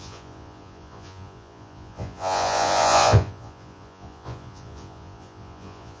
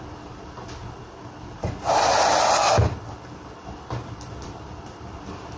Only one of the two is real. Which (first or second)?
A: second